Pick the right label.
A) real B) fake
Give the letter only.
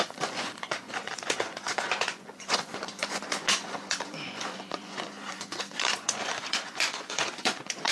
B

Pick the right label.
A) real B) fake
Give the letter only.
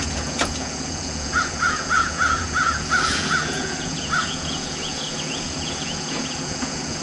B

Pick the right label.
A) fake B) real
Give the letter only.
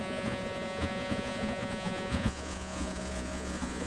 A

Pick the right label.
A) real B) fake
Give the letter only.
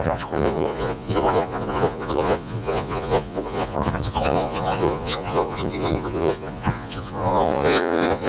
B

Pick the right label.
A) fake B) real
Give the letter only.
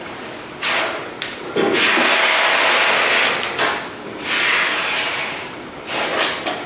B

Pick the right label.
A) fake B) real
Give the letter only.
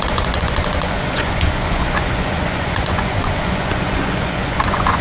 A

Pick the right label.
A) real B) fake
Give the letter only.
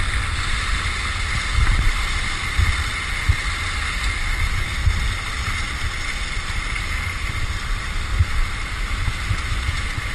A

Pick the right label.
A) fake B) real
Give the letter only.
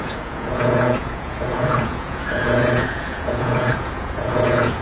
A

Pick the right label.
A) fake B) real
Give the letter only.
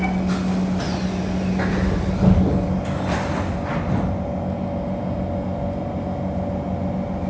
B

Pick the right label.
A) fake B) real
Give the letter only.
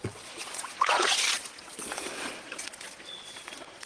A